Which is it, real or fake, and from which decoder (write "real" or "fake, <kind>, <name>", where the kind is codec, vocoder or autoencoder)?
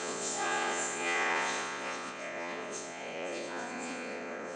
fake, vocoder, Vocos